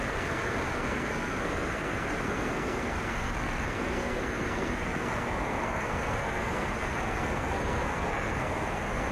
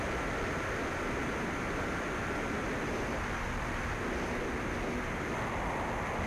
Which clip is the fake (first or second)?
first